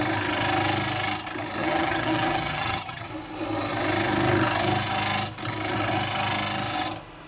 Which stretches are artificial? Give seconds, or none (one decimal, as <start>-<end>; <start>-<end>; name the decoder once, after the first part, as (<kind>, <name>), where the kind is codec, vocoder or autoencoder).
1.6-3.1 (vocoder, HiFi-GAN)